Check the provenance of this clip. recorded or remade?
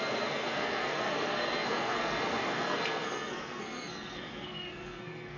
remade